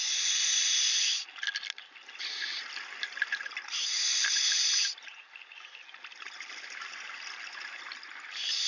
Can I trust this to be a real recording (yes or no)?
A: yes